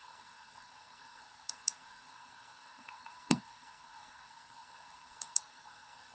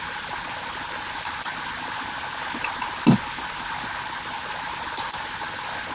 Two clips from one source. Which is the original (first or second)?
second